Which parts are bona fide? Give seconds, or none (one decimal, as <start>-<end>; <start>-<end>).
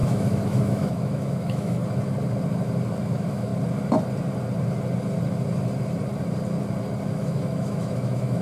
1.8-3.0; 3.5-7.1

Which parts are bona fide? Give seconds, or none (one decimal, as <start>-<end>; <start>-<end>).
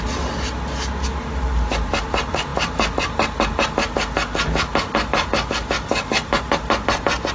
0.0-7.3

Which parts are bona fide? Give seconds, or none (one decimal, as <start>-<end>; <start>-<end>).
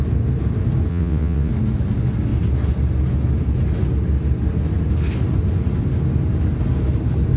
0.0-0.9; 1.5-7.4